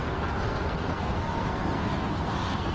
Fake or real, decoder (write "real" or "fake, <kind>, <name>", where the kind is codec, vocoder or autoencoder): fake, codec, SNAC